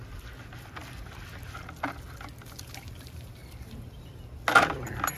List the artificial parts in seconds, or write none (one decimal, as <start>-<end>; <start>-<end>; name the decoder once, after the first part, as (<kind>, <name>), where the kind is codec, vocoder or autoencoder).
0.0-0.8 (vocoder, BigVGAN v2); 2.6-3.4; 4.7-5.2